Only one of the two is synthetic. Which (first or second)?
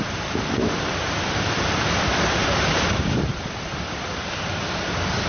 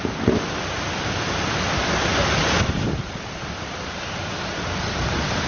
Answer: first